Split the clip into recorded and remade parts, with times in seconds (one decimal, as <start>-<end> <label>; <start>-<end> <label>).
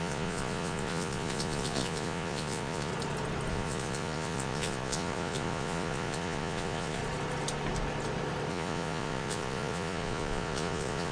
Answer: 0.0-2.9 remade; 2.9-3.5 recorded; 3.5-7.0 remade; 7.0-8.5 recorded; 8.5-11.1 remade